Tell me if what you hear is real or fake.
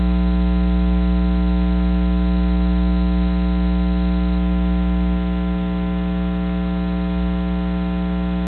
real